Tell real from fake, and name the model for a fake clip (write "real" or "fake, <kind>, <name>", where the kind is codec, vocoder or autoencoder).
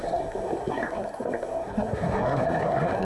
fake, codec, SNAC